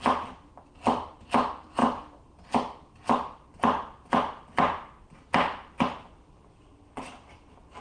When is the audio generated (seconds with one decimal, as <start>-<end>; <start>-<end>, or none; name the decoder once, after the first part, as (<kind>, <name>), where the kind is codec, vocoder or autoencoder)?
6.5-7.3 (vocoder, WaveNeXt)